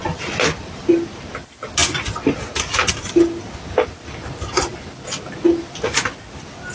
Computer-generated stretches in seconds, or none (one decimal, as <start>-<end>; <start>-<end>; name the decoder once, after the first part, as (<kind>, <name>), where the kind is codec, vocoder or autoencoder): none